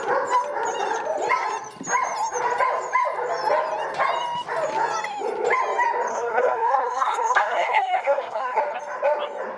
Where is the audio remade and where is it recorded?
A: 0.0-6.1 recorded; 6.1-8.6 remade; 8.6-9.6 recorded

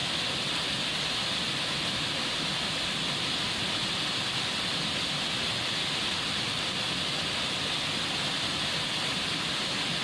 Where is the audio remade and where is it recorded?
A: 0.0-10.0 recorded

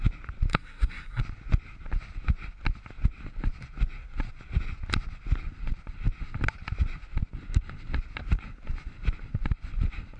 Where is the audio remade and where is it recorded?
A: 0.0-0.5 recorded; 0.5-1.2 remade; 1.2-10.2 recorded